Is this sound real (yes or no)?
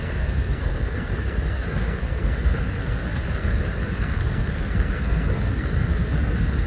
no